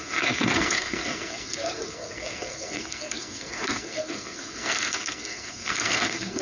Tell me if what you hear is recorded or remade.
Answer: remade